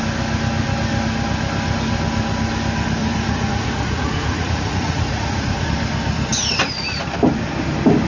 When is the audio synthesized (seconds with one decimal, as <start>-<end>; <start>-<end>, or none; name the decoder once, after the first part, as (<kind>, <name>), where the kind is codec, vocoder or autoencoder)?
3.0-5.7 (vocoder, Vocos)